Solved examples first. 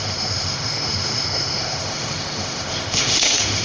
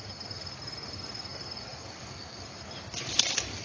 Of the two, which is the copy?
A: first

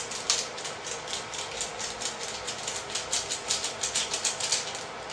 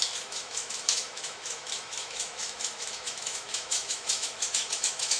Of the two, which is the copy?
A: second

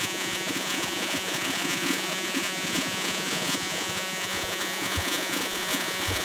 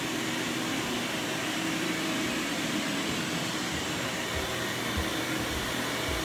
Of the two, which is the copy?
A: first